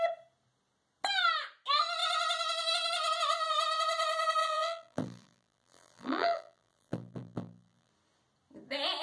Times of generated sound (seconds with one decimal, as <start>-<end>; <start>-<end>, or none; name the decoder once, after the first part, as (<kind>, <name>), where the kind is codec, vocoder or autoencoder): 4.4-7.9 (vocoder, BigVGAN v2)